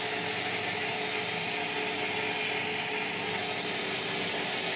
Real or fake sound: real